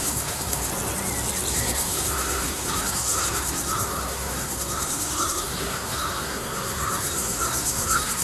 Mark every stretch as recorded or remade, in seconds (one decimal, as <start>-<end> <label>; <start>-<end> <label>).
0.0-0.7 remade; 0.7-1.5 recorded; 1.5-8.2 remade